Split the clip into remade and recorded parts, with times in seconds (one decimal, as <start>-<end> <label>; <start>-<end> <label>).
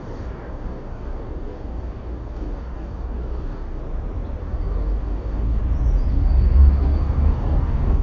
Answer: 0.0-3.8 remade; 3.8-4.4 recorded; 4.4-5.6 remade; 5.6-6.1 recorded; 6.1-8.0 remade